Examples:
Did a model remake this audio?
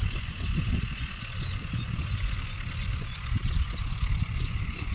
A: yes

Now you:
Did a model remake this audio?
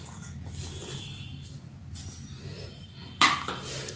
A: no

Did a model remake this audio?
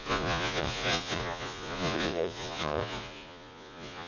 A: yes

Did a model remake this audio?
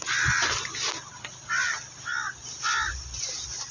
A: no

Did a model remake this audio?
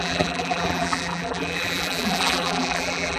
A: yes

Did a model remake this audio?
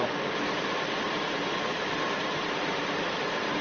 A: yes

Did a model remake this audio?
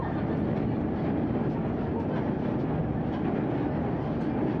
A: no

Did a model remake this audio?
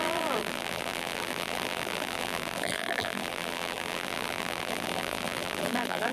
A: yes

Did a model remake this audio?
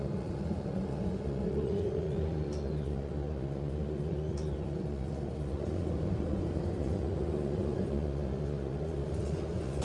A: yes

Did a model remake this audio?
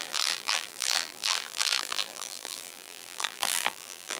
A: yes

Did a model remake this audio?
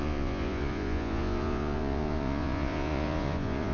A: yes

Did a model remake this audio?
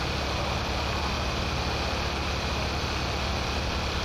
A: no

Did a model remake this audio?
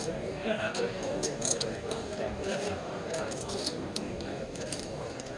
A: yes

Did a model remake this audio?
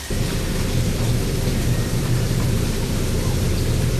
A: yes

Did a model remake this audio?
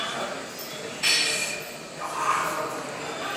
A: no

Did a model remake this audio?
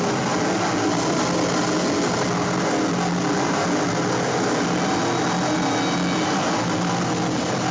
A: no